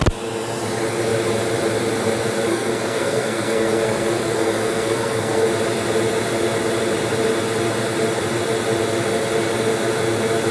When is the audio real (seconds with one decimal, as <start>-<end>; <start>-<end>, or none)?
0.0-2.5; 5.5-10.5